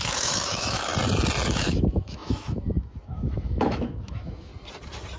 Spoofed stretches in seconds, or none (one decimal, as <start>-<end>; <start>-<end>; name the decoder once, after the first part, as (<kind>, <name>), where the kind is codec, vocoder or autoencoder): 0.0-0.9 (autoencoder, DAC-VAE); 1.5-4.5